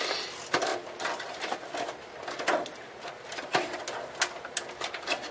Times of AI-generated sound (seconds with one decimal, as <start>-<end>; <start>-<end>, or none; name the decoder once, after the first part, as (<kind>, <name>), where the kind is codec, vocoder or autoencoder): none